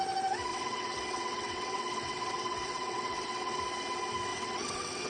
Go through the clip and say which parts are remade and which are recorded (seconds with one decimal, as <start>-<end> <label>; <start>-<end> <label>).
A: 0.0-0.5 recorded; 0.5-3.6 remade; 3.6-4.3 recorded; 4.3-5.1 remade